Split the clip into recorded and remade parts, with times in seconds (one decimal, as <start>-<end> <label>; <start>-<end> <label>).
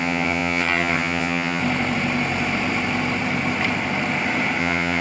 0.0-1.6 remade; 1.6-4.6 recorded; 4.6-5.0 remade